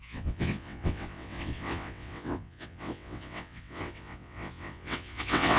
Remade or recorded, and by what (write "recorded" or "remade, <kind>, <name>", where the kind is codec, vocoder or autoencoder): remade, vocoder, WaveNeXt